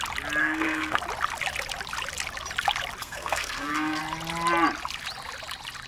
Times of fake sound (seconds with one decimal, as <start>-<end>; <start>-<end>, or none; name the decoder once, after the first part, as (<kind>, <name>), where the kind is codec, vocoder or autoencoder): 0.4-1.0 (codec, SNAC); 3.0-4.0